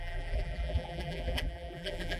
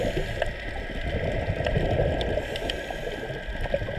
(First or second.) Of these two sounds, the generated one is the first